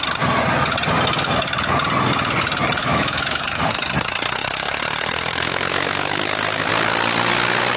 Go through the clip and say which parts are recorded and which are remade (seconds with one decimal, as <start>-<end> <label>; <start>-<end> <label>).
0.0-2.8 recorded; 2.8-3.7 remade; 3.7-4.4 recorded; 4.4-6.7 remade; 6.7-7.8 recorded

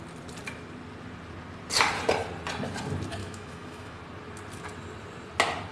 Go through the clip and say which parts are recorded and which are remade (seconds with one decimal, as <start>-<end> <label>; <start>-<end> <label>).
0.0-3.2 recorded; 3.2-4.0 remade; 4.0-5.7 recorded

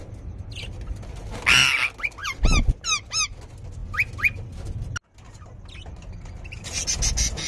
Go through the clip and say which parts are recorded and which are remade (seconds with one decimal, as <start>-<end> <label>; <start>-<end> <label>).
0.0-7.5 recorded

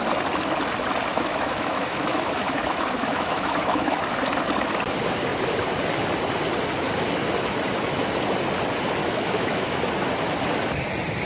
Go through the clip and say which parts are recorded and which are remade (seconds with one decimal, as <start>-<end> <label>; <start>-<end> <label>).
0.0-1.1 recorded; 1.1-4.0 remade; 4.0-9.0 recorded; 9.0-9.8 remade; 9.8-11.3 recorded

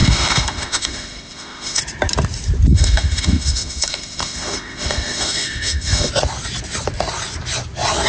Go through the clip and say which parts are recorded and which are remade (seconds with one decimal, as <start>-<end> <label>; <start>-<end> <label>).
0.0-1.8 remade; 1.8-2.7 recorded; 2.7-6.1 remade; 6.1-8.1 recorded

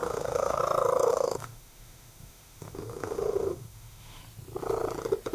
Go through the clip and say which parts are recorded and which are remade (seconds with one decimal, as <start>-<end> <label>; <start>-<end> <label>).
0.0-0.6 remade; 0.6-1.1 recorded; 1.1-4.2 remade; 4.2-5.3 recorded

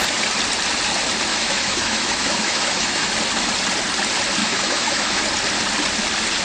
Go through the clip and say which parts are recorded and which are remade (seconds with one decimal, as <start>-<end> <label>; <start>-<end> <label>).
0.0-1.3 recorded; 1.3-3.1 remade; 3.1-4.4 recorded; 4.4-5.2 remade; 5.2-6.4 recorded